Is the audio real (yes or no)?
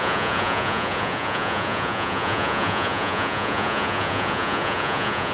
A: no